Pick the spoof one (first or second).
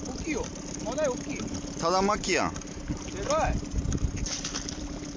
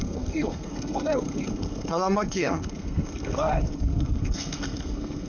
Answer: second